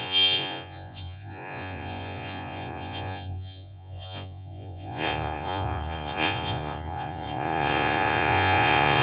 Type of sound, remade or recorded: remade